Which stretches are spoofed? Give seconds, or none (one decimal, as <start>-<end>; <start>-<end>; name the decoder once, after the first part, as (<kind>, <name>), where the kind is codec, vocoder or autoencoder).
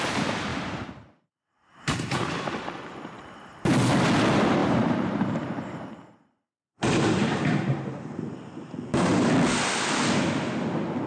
0.5-2.3 (vocoder, BigVGAN v2); 4.6-9.3